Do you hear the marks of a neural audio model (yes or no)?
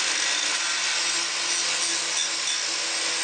no